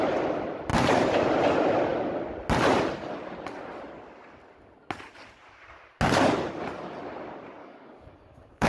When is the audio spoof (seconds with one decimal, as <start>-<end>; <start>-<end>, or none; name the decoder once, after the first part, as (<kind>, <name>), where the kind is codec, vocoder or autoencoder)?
7.6-8.7 (codec, DAC)

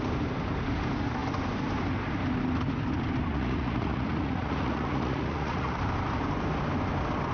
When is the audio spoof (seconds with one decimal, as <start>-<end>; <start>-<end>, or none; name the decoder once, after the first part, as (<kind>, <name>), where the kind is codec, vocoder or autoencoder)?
3.3-5.8 (vocoder, Vocos)

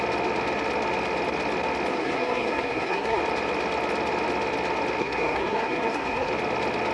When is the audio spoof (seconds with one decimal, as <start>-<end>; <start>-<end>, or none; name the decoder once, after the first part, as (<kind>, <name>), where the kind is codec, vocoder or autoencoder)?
1.9-3.2 (codec, SNAC); 5.0-6.3

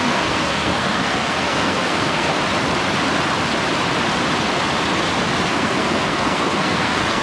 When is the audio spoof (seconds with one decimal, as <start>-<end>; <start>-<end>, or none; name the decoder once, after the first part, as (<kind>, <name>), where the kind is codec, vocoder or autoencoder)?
0.0-2.3 (codec, SNAC); 5.5-7.2

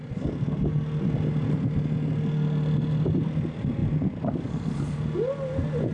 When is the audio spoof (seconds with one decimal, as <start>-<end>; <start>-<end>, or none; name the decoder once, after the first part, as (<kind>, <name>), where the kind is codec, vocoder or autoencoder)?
none